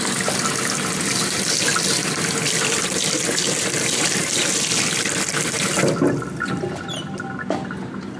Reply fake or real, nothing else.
real